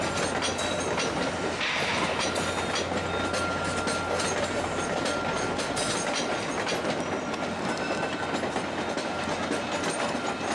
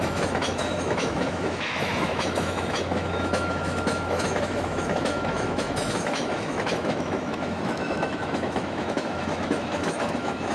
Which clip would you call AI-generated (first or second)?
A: second